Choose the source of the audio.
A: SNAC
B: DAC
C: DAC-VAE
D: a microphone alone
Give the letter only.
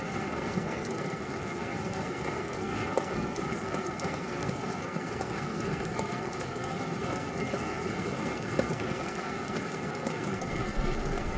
A